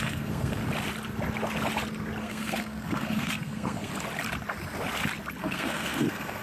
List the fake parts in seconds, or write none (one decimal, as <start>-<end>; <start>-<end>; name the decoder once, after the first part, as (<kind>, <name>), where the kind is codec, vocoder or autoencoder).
0.0-0.6 (codec, SNAC); 2.2-3.9; 5.4-6.4